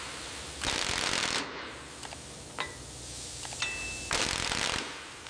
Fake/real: real